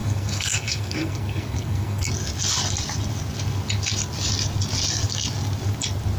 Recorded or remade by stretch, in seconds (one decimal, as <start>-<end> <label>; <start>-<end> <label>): 0.0-2.1 remade; 2.1-6.2 recorded